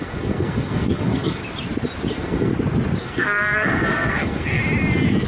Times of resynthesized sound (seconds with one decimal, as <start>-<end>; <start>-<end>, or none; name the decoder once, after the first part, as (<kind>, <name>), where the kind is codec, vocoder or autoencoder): 0.0-1.4 (codec, SNAC); 2.1-2.5; 3.0-4.6